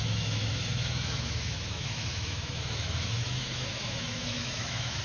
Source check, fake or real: fake